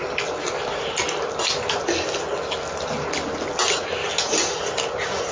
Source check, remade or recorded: recorded